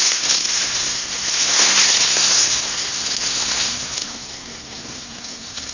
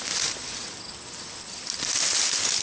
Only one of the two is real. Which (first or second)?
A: second